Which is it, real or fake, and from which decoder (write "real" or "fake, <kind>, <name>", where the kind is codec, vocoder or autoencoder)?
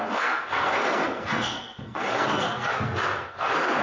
fake, codec, SNAC